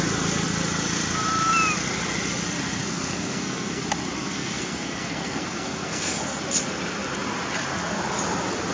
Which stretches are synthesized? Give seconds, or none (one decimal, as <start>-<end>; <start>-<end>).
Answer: 2.8-3.8; 4.2-6.4